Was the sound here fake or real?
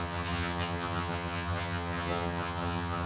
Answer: fake